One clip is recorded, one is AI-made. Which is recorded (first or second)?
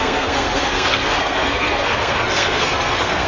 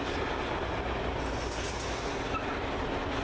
second